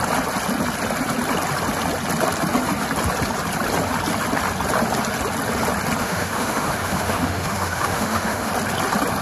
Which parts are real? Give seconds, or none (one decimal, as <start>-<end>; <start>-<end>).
0.0-6.0; 8.5-9.2